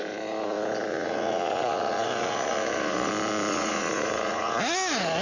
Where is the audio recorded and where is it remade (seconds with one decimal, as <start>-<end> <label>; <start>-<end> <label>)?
0.0-0.9 recorded; 0.9-3.1 remade; 3.1-3.5 recorded; 3.5-4.6 remade; 4.6-5.2 recorded